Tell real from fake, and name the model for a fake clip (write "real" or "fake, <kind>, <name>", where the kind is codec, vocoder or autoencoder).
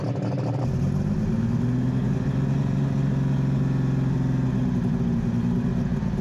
real